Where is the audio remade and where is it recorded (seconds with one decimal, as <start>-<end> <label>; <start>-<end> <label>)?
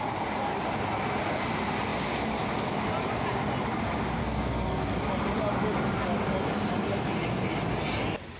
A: 0.0-4.2 recorded; 4.2-4.9 remade; 4.9-8.4 recorded